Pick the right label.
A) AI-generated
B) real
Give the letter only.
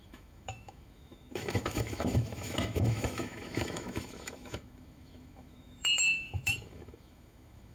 A